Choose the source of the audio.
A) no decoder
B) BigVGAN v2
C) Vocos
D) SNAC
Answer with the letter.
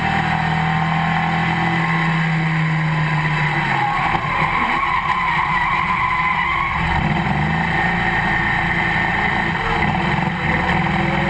A